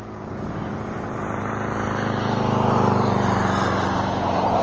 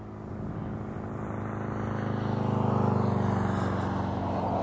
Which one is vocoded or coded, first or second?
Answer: first